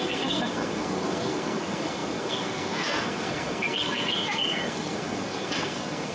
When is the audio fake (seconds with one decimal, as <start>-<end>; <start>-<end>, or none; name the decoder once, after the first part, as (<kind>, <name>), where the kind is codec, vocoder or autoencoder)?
0.0-6.1 (codec, SNAC)